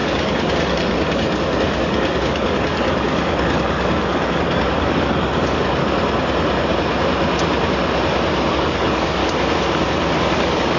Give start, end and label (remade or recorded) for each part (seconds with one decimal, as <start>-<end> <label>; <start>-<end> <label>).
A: 0.0-5.8 remade; 5.8-8.5 recorded; 8.5-9.2 remade; 9.2-10.4 recorded; 10.4-10.8 remade